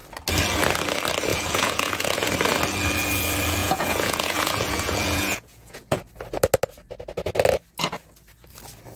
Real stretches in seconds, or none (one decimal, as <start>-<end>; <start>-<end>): 0.0-1.3; 2.3-3.6; 6.0-9.0